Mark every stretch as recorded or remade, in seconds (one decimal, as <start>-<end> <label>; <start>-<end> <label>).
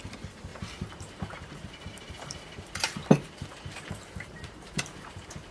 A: 0.0-5.5 remade